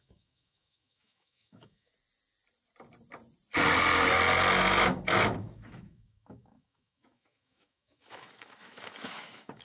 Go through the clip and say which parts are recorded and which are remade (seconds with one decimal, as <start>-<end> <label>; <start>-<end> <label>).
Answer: 0.0-1.9 remade; 1.9-5.4 recorded; 5.4-9.6 remade